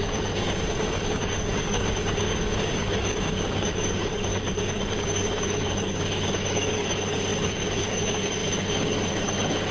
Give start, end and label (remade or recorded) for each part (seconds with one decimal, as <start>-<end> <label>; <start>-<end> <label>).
0.0-9.7 remade